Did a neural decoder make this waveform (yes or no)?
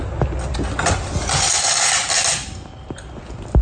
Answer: no